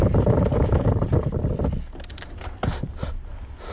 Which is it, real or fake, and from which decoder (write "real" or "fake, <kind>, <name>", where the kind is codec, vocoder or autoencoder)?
real